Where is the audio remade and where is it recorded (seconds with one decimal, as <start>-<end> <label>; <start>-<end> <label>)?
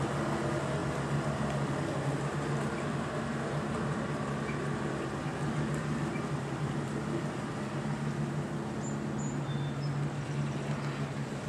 0.0-11.5 recorded